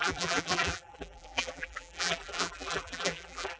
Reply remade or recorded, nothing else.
remade